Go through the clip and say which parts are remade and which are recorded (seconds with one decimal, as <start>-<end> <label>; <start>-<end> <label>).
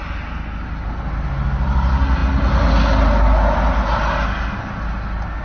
0.0-5.4 recorded